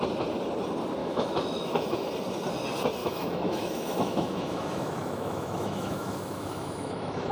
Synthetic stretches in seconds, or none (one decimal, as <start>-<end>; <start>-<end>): 1.0-2.1; 3.0-7.3